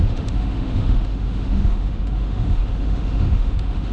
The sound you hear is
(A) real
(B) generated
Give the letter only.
B